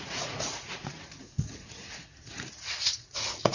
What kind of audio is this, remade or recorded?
remade